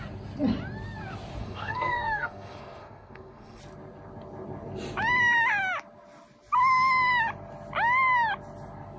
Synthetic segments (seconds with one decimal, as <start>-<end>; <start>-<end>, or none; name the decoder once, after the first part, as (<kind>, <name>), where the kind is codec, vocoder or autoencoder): 1.4-3.6 (codec, SNAC)